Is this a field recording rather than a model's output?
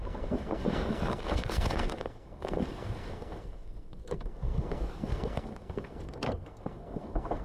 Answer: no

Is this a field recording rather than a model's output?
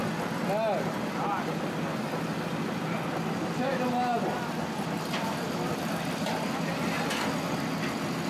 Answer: yes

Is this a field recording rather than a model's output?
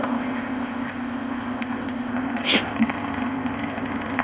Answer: no